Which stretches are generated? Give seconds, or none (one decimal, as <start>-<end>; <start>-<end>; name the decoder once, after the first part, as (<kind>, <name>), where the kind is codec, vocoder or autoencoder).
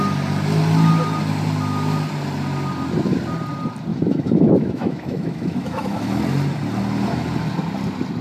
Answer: 3.9-6.2 (autoencoder, DAC-VAE)